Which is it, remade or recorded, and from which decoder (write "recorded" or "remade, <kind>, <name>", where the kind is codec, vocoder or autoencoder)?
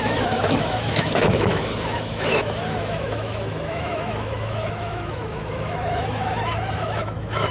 remade, autoencoder, DAC-VAE